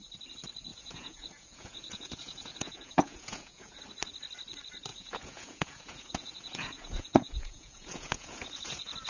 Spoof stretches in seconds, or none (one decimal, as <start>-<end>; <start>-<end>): 0.7-3.8; 4.9-9.1